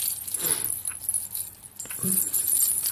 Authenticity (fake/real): real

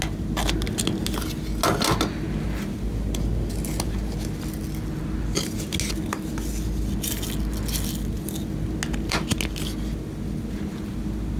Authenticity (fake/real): real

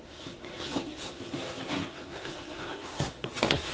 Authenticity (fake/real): fake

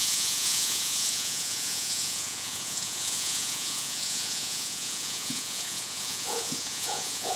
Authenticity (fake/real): fake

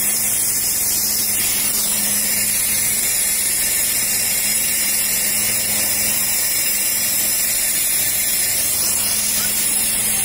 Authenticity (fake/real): fake